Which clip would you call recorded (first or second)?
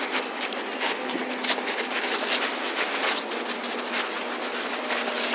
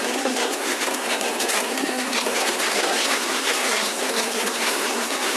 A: first